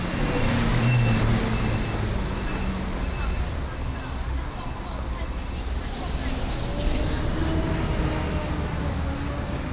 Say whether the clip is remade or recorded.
recorded